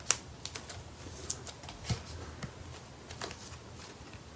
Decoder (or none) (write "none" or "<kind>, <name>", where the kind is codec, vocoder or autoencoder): none